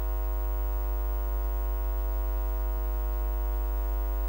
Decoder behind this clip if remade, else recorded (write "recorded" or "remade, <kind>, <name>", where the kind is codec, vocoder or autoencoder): recorded